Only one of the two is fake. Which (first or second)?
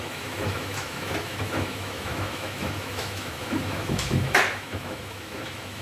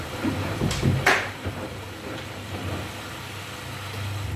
first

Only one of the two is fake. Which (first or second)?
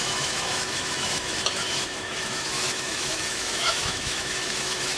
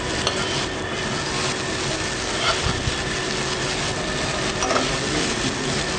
first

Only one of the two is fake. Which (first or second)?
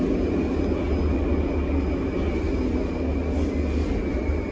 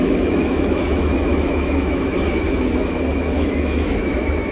second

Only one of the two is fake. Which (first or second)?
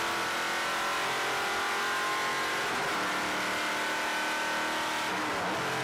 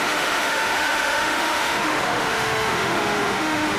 second